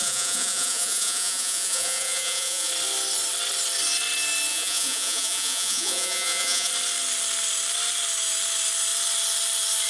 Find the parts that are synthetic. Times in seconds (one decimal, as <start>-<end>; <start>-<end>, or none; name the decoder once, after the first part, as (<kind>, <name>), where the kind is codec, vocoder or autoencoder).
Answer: 0.0-2.7 (vocoder, Vocos); 4.5-6.7